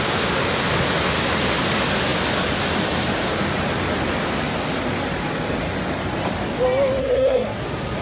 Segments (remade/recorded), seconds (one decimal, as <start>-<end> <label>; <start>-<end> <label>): 0.0-7.0 recorded; 7.0-7.6 remade; 7.6-8.0 recorded